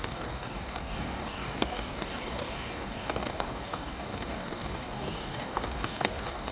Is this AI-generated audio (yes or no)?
yes